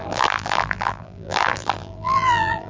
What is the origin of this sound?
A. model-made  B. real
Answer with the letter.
A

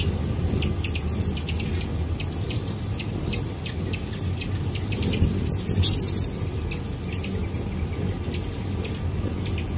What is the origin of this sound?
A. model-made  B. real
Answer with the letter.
B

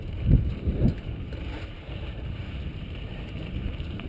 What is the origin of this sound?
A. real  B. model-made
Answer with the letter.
B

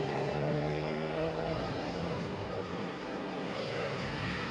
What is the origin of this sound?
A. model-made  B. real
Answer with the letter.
A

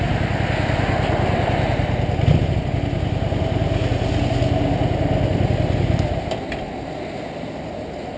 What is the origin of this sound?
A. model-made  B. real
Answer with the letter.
B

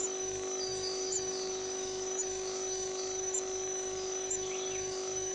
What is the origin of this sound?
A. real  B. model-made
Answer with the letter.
B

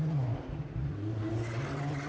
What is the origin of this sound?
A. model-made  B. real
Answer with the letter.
B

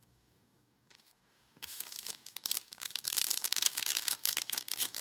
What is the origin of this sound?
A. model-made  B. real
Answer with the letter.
A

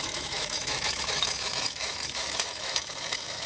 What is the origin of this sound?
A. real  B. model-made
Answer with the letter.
B